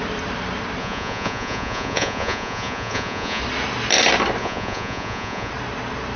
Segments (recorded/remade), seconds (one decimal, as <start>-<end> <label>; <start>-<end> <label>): 0.0-0.8 recorded; 0.8-3.4 remade; 3.4-4.4 recorded; 4.4-5.5 remade; 5.5-6.2 recorded